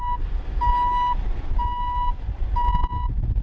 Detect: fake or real real